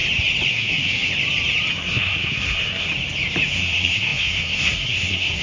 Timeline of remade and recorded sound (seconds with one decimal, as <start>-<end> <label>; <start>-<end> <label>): 0.0-0.5 recorded; 0.5-1.1 remade; 1.1-1.7 recorded; 1.7-2.9 remade; 2.9-3.5 recorded; 3.5-5.4 remade